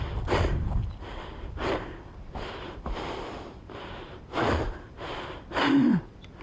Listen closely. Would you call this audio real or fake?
real